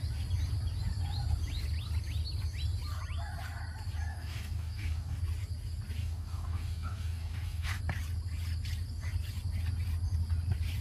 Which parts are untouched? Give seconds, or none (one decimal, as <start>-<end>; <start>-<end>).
0.0-4.1; 5.2-6.0; 7.8-10.8